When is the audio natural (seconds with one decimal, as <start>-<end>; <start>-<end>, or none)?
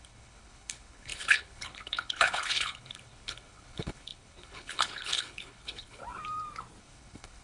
6.0-6.8